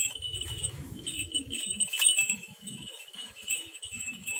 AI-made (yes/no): yes